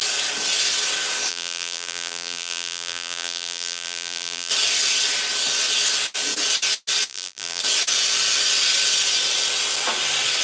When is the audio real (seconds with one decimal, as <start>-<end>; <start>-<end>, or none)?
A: 0.0-1.3; 4.5-7.1; 7.6-10.4